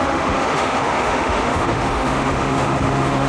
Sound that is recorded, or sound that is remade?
remade